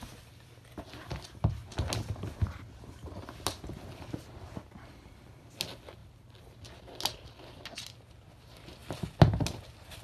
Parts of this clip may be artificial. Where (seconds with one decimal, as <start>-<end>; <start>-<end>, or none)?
none